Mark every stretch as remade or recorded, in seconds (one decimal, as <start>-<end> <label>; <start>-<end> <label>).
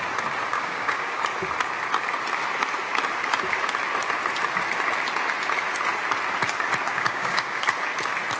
0.0-0.5 recorded; 0.5-1.2 remade; 1.2-6.9 recorded; 6.9-7.6 remade; 7.6-8.4 recorded